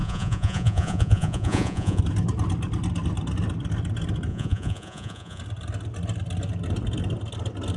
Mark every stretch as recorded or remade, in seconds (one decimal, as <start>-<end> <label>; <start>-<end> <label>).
0.0-2.0 remade; 2.0-4.3 recorded; 4.3-5.4 remade; 5.4-7.8 recorded

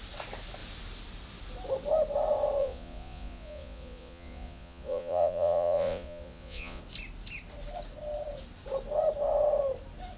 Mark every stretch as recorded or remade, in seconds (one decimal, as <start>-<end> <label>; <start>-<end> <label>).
0.0-2.6 recorded; 2.6-6.8 remade; 6.8-10.2 recorded

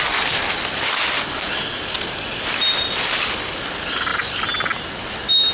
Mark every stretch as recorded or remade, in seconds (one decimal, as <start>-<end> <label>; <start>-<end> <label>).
0.0-5.5 recorded

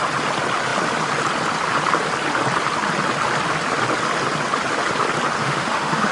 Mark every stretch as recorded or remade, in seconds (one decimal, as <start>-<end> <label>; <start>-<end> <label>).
0.0-5.4 recorded; 5.4-6.1 remade

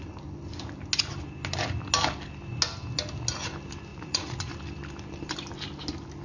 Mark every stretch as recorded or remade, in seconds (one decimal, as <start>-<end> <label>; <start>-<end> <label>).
0.0-3.9 recorded; 3.9-4.5 remade; 4.5-6.2 recorded